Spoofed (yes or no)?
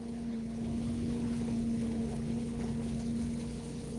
yes